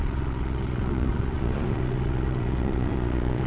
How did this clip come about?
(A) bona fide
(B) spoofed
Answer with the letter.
B